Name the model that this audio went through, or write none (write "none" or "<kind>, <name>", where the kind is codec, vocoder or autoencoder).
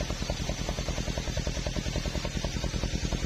none